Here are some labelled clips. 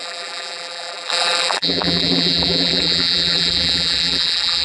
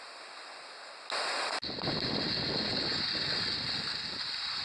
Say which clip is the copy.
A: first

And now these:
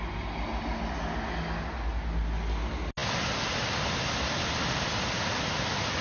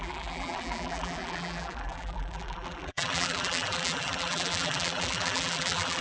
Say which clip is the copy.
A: second